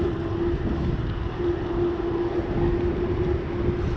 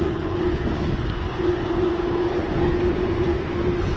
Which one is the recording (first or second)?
first